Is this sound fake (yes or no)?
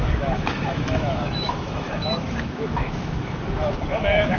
yes